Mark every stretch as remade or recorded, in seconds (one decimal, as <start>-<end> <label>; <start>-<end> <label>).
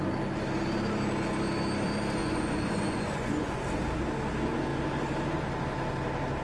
0.0-2.2 recorded; 2.2-3.6 remade; 3.6-6.4 recorded